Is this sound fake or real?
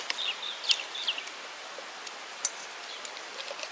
fake